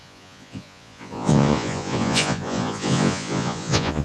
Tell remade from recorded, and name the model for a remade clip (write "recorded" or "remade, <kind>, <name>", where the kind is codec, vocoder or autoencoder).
remade, vocoder, Vocos